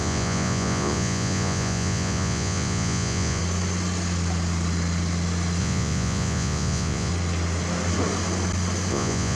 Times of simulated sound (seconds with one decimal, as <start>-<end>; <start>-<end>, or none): 0.0-3.4; 5.6-7.1; 8.9-9.4

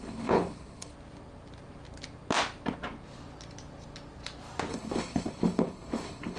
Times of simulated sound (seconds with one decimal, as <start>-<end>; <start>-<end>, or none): 0.0-0.9; 4.7-6.4

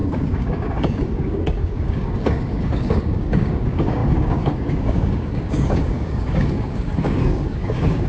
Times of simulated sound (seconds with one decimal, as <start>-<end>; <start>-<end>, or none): 0.0-8.1

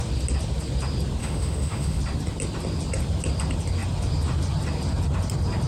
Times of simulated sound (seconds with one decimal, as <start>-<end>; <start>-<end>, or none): 1.2-2.0